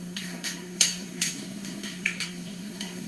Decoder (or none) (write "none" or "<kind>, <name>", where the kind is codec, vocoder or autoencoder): codec, SNAC